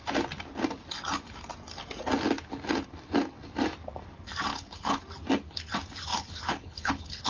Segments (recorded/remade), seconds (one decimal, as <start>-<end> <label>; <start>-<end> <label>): 0.0-4.5 recorded; 4.5-5.0 remade; 5.0-6.1 recorded; 6.1-7.3 remade